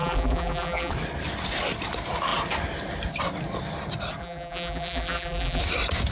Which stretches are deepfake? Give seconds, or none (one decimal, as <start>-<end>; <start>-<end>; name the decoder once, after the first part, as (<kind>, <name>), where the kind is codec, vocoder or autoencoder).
0.0-0.9 (vocoder, BigVGAN v2); 4.2-5.6